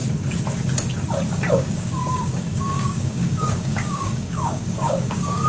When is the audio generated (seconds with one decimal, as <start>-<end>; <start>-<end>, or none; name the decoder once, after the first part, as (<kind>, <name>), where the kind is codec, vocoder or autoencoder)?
1.5-5.5 (codec, DAC)